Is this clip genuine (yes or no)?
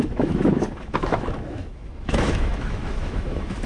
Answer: no